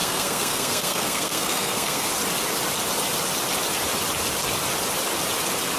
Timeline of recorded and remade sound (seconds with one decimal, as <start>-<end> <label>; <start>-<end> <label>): 0.0-2.1 remade; 2.1-5.8 recorded